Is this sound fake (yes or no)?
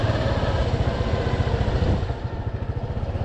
no